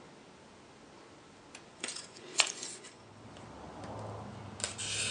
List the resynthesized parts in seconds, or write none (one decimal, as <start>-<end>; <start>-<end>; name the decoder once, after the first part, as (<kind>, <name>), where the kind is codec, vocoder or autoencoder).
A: 1.7-3.2 (vocoder, Vocos)